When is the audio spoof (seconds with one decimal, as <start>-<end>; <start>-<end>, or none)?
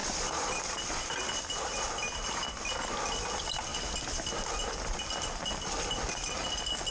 0.0-1.2; 3.7-6.1